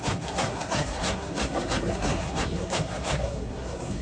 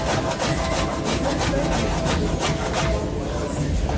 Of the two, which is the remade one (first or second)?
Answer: first